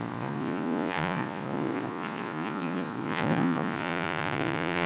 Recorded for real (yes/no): no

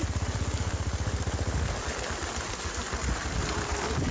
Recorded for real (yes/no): no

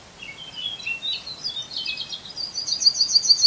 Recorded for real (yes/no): yes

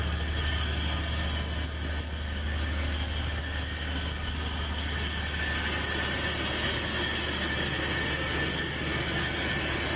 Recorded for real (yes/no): yes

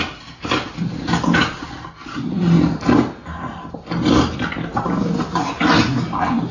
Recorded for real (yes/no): yes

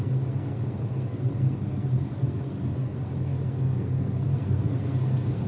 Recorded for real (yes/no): no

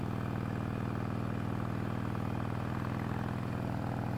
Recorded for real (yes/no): yes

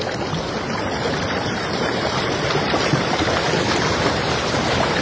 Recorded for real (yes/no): no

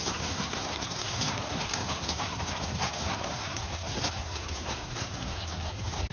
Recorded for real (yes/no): no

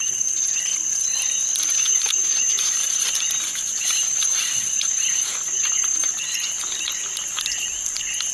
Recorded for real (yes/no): yes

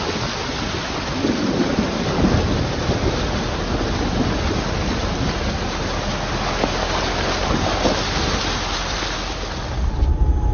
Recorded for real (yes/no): yes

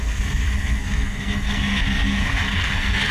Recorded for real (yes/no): no